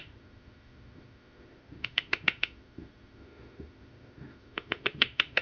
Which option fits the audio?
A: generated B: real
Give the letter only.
A